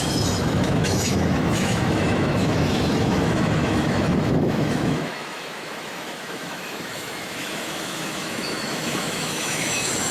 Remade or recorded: remade